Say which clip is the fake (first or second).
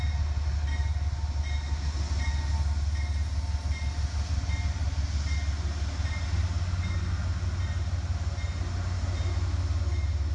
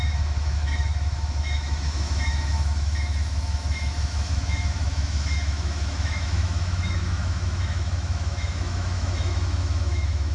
second